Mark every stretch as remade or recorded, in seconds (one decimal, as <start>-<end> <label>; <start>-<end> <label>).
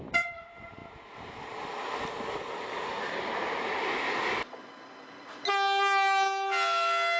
0.0-7.2 recorded